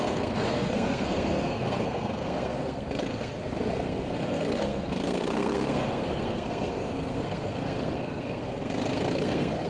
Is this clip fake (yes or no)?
yes